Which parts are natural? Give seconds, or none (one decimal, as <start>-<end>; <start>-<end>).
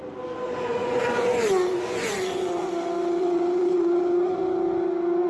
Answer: 0.0-0.8; 2.7-3.2; 4.4-5.3